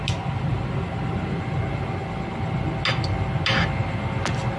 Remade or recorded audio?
recorded